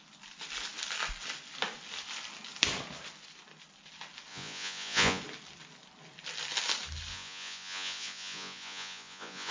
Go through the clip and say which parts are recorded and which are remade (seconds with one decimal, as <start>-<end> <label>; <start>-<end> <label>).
0.0-4.3 recorded; 4.3-5.2 remade; 5.2-7.1 recorded; 7.1-9.5 remade

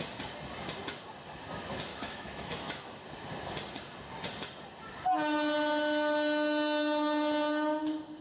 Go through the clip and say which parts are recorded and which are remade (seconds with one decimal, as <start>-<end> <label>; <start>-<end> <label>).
0.0-1.9 recorded; 1.9-3.0 remade; 3.0-8.2 recorded

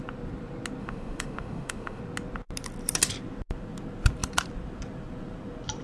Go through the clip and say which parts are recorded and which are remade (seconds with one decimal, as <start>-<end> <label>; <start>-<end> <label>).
0.0-0.8 recorded; 0.8-2.0 remade; 2.0-5.8 recorded

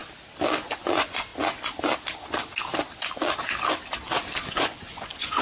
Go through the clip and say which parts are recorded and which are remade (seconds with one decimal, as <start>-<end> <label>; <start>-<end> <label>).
0.0-0.7 recorded; 0.7-1.3 remade; 1.3-4.5 recorded; 4.5-5.4 remade

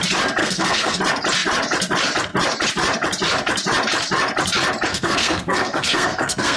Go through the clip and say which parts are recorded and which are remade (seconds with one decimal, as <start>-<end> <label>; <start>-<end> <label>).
0.0-0.4 recorded; 0.4-1.0 remade; 1.0-4.9 recorded; 4.9-6.6 remade

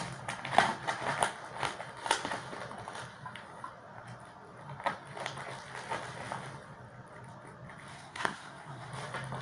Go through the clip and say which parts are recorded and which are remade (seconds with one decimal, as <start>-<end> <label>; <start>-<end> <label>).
0.0-7.9 recorded; 7.9-8.9 remade; 8.9-9.4 recorded

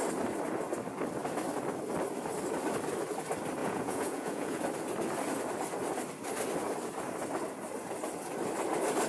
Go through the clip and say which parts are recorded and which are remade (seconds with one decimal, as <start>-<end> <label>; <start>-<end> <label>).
0.0-3.6 recorded; 3.6-4.6 remade; 4.6-9.1 recorded

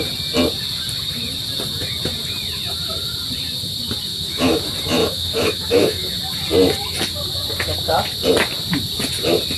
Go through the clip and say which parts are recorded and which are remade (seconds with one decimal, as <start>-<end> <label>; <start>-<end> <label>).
0.0-4.1 recorded; 4.1-4.6 remade; 4.6-5.0 recorded; 5.0-6.1 remade; 6.1-9.6 recorded